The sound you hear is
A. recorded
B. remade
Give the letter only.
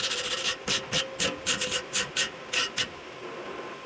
A